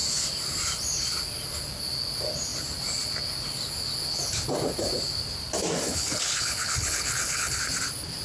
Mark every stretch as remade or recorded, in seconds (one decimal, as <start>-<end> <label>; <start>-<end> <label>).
0.0-5.9 recorded; 5.9-7.6 remade; 7.6-8.2 recorded